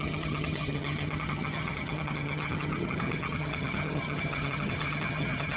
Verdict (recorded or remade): remade